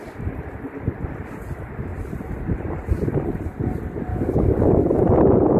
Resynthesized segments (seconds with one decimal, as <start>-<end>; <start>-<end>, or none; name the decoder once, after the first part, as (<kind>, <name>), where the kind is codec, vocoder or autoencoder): 4.1-4.6 (codec, DAC)